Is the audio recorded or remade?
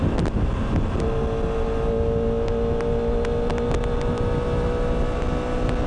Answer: recorded